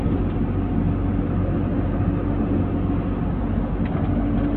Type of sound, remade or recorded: recorded